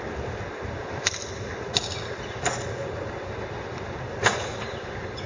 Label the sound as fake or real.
real